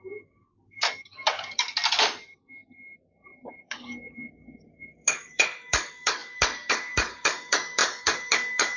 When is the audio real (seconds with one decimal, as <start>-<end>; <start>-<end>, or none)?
1.8-3.5